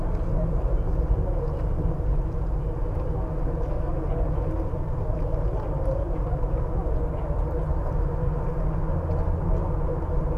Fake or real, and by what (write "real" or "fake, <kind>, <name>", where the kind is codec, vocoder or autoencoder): real